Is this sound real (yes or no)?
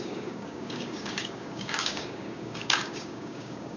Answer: no